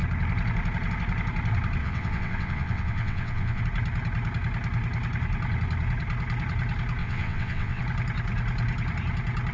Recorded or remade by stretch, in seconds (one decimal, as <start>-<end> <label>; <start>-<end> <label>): 0.0-1.8 recorded; 1.8-3.6 remade; 3.6-7.0 recorded; 7.0-7.8 remade; 7.8-9.5 recorded

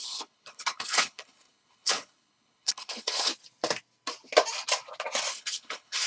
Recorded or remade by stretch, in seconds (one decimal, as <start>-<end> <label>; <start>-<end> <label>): 0.0-3.3 remade; 3.3-5.3 recorded; 5.3-6.1 remade

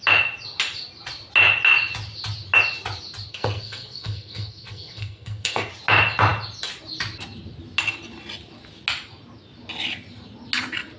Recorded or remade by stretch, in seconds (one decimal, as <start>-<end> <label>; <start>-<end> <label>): 0.0-3.3 recorded; 3.3-5.7 remade; 5.7-11.0 recorded

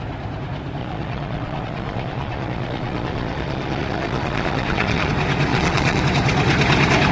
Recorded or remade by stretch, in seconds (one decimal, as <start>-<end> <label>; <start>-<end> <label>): 0.0-0.8 recorded; 0.8-5.1 remade; 5.1-5.5 recorded; 5.5-6.0 remade; 6.0-7.1 recorded

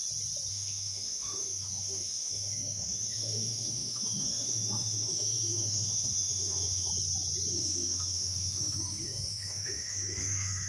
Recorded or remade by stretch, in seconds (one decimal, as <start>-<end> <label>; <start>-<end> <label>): 0.0-0.5 recorded; 0.5-6.9 remade; 6.9-7.5 recorded; 7.5-10.7 remade